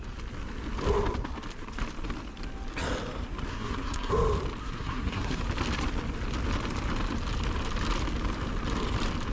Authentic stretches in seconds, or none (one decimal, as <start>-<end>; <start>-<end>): 0.0-3.5; 4.1-4.6; 5.4-9.3